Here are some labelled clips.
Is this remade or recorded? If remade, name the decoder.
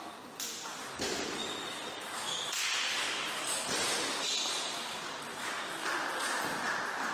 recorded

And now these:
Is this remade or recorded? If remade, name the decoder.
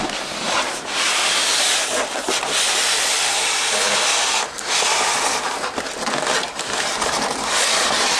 remade, vocoder, BigVGAN v2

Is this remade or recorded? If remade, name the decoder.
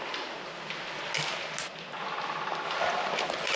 recorded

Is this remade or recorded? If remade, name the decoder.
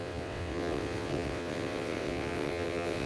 remade, vocoder, WaveNeXt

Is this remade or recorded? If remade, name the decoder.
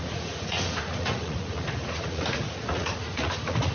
remade, vocoder, Vocos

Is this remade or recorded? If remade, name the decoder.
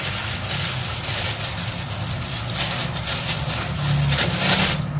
recorded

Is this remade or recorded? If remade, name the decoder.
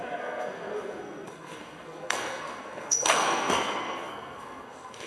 remade, codec, SNAC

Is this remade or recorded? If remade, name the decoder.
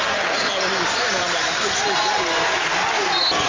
recorded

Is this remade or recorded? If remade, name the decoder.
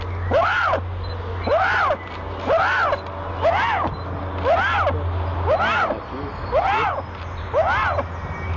recorded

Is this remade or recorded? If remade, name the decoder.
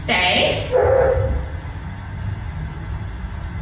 recorded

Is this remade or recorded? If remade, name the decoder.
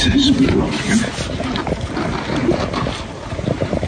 recorded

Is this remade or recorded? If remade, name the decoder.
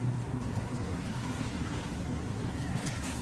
remade, codec, SNAC